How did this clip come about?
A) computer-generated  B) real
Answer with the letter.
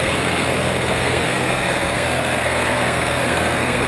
A